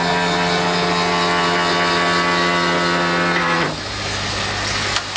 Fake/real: real